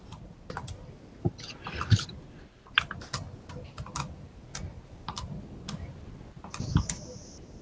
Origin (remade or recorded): recorded